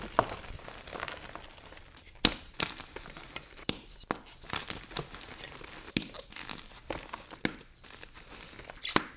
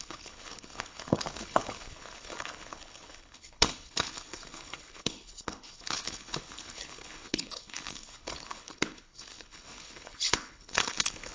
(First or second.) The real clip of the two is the first